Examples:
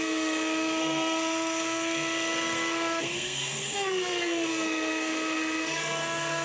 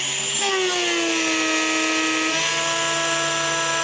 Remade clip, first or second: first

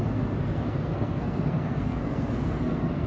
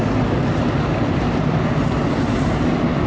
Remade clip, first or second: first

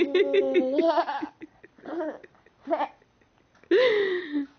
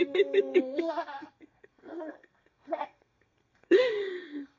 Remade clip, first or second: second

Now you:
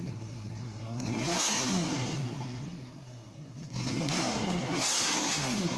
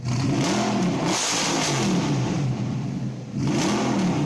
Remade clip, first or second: first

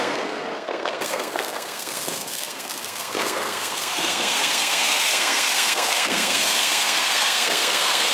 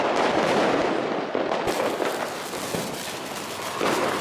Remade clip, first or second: first